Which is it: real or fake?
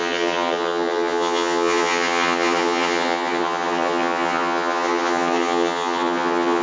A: fake